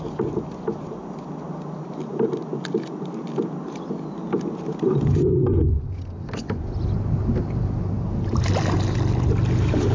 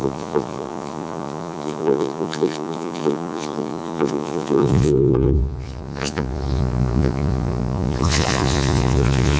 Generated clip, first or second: second